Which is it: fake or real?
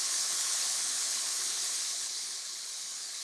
fake